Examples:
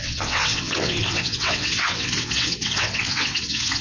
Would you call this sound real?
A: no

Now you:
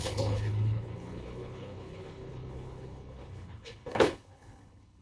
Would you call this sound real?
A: no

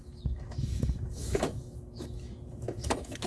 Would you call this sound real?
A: no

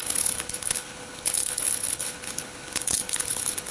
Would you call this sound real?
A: no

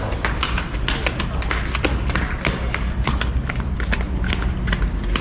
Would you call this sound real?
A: yes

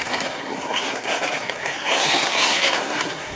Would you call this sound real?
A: no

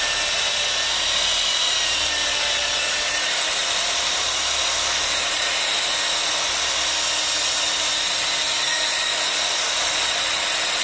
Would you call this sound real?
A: yes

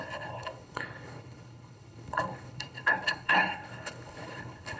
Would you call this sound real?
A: no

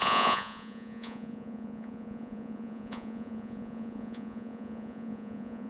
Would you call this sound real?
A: no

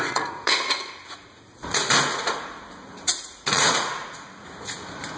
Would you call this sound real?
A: no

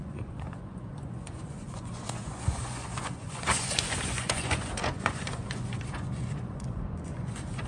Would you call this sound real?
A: no